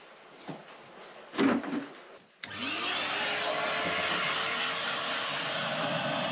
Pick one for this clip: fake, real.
real